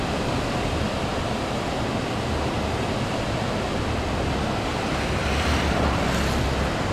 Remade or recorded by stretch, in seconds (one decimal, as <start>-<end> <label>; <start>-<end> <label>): 0.0-4.7 recorded; 4.7-6.1 remade; 6.1-6.9 recorded